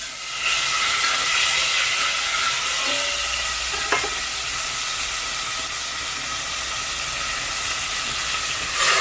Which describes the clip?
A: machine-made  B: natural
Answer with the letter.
B